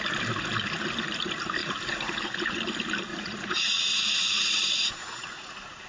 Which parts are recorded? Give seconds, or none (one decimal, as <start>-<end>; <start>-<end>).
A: 0.0-1.6; 2.6-3.1; 5.5-5.9